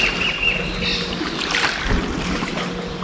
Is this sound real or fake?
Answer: real